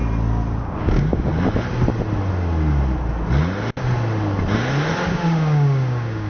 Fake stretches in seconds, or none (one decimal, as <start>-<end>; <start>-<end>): 0.6-1.3; 5.1-6.3